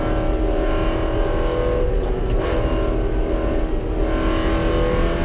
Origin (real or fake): real